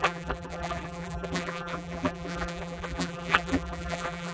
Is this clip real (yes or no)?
no